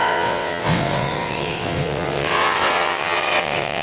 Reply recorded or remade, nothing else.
remade